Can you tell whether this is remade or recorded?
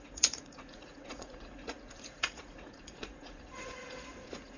remade